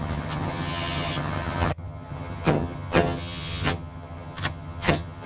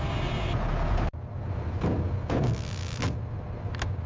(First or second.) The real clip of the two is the second